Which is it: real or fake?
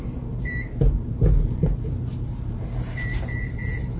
fake